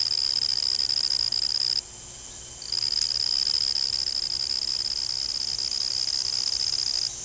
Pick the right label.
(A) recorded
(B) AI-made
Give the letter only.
A